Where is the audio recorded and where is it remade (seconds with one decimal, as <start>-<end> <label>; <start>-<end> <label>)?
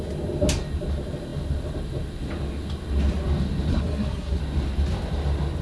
0.0-3.7 recorded; 3.7-4.4 remade; 4.4-5.6 recorded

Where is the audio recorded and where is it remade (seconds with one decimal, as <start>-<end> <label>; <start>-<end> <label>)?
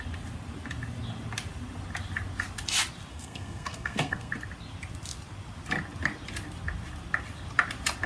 0.0-3.1 recorded; 3.1-4.3 remade; 4.3-8.1 recorded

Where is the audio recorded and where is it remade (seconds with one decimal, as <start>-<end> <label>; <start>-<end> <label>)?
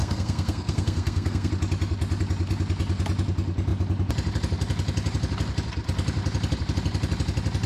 0.0-1.5 remade; 1.5-7.7 recorded